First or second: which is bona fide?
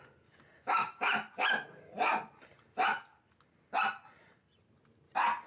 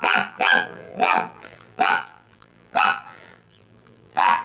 first